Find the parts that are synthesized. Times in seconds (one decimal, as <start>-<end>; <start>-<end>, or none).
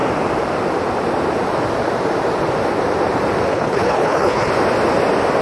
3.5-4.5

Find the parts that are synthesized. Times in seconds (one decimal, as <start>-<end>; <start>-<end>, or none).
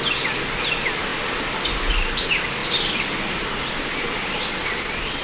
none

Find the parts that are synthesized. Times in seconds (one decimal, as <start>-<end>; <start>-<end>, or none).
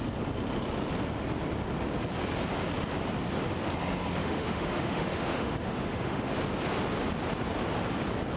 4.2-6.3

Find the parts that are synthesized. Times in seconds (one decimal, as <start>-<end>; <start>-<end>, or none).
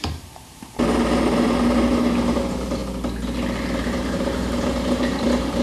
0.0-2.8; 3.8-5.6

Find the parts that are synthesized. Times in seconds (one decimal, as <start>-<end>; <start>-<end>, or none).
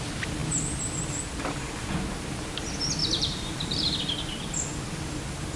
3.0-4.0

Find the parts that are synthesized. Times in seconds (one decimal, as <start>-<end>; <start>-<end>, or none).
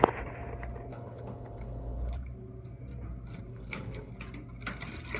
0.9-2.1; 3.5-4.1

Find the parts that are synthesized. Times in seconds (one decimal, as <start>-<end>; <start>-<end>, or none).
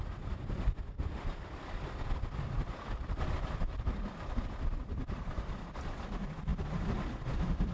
0.0-6.5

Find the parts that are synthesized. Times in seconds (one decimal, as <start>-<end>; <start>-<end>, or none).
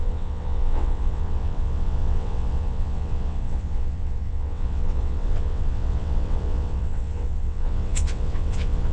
0.0-8.9